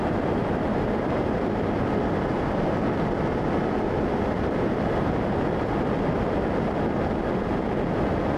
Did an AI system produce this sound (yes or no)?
no